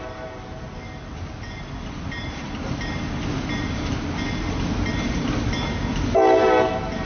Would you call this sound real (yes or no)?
yes